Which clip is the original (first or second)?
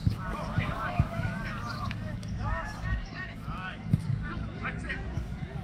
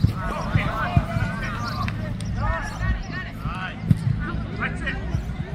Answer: second